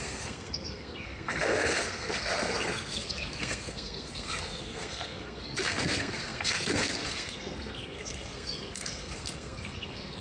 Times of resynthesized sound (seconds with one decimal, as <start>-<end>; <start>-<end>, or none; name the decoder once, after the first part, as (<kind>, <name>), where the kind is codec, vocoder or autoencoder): 0.0-10.2 (codec, SNAC)